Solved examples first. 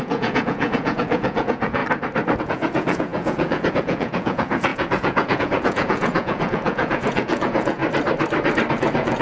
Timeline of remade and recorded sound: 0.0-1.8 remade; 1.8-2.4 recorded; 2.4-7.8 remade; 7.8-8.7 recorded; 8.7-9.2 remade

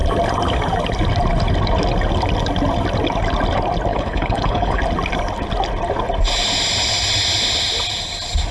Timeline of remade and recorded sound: 0.0-3.9 recorded; 3.9-4.8 remade; 4.8-8.5 recorded

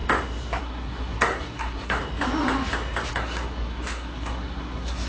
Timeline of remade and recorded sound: 0.0-0.6 recorded; 0.6-2.0 remade; 2.0-3.1 recorded; 3.1-5.1 remade